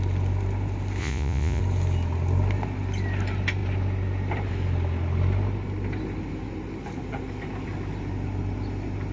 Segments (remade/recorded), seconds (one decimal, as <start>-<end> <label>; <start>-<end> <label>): 0.0-1.0 recorded; 1.0-1.6 remade; 1.6-9.1 recorded